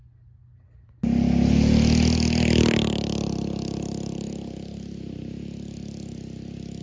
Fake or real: real